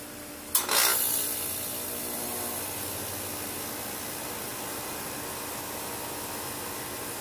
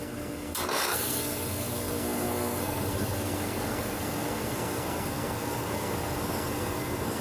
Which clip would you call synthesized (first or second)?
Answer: second